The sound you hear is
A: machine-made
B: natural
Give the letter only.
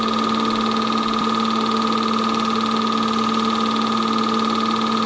B